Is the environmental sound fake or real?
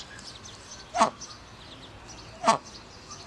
real